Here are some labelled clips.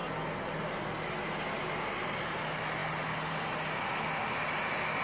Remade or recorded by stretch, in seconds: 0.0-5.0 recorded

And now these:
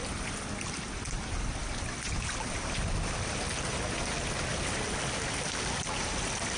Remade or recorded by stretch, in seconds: 0.0-6.6 recorded

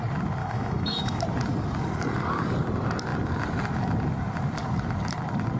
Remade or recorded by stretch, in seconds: 0.0-0.4 recorded; 0.4-1.2 remade; 1.2-5.6 recorded